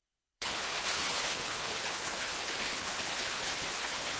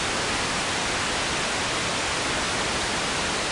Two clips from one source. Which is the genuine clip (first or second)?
second